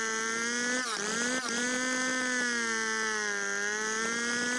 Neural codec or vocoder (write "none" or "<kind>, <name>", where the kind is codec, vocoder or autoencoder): none